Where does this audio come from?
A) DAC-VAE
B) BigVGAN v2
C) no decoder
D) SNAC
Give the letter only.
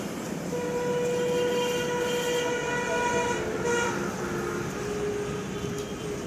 C